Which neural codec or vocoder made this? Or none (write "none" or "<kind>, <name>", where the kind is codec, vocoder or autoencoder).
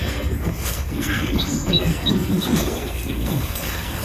codec, SNAC